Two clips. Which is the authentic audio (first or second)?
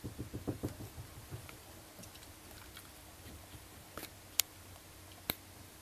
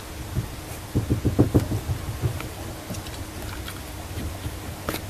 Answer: second